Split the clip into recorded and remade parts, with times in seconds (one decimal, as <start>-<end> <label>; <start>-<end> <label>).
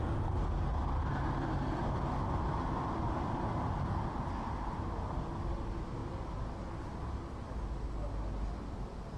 0.0-9.2 recorded